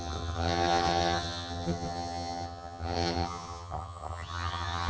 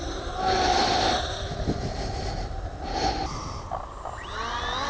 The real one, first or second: second